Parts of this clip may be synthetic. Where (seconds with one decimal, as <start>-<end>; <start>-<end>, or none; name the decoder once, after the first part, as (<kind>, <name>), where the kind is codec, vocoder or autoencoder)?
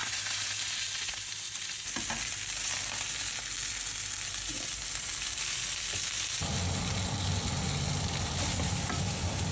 none